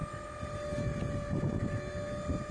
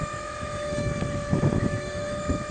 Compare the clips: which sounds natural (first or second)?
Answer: first